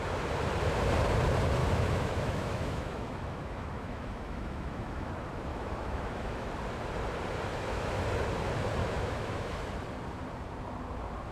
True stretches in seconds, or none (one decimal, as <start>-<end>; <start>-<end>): 0.0-1.6; 5.1-5.5; 6.5-7.5; 8.0-8.8; 9.6-11.3